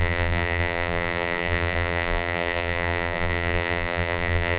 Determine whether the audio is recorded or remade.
remade